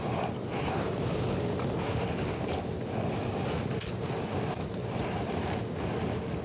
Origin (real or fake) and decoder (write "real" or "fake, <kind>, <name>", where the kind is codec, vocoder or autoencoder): real